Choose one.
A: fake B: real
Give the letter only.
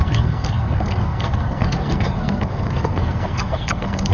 A